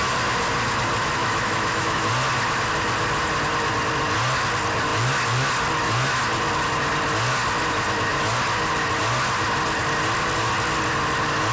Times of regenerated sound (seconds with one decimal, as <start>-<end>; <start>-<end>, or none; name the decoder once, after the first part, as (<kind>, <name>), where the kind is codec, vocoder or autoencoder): 1.2-2.1 (autoencoder, DAC-VAE)

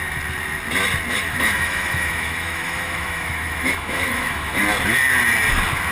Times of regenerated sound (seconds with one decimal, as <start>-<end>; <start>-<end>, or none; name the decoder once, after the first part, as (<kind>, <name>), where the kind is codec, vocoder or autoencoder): 1.1-4.6 (autoencoder, DAC-VAE)

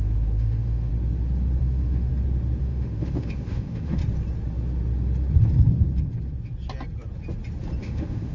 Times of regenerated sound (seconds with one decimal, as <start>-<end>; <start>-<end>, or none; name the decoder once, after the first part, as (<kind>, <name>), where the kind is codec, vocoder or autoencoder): 0.0-0.9 (autoencoder, DAC-VAE); 1.6-2.1; 2.6-4.0; 7.8-8.3